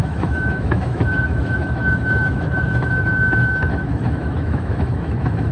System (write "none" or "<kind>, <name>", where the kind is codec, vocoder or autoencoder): autoencoder, DAC-VAE